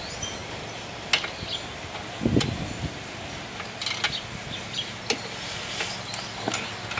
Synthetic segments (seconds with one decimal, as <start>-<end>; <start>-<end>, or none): none